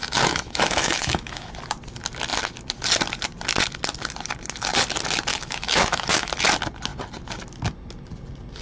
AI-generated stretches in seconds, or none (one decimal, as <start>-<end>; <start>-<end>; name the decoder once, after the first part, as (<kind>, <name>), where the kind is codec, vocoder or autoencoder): 0.0-1.5 (autoencoder, DAC-VAE); 5.3-6.3